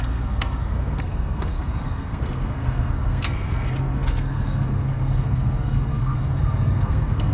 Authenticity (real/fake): fake